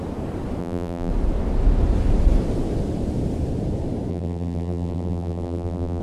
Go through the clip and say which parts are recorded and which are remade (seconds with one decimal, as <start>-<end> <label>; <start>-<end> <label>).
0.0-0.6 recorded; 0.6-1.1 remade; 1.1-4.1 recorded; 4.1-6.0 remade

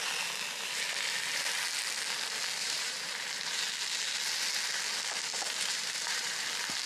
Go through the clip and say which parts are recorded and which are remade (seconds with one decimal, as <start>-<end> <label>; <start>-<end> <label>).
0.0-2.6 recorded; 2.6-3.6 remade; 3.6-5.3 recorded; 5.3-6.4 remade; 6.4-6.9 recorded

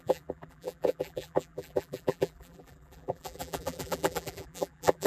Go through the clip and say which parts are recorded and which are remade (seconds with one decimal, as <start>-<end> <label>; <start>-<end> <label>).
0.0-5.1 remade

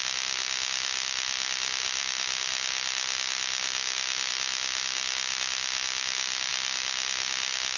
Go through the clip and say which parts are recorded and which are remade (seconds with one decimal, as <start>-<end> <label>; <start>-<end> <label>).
0.0-7.8 recorded

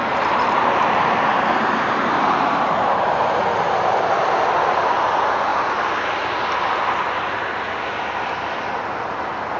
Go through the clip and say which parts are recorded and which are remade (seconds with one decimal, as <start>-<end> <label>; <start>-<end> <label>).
0.0-4.0 remade; 4.0-9.6 recorded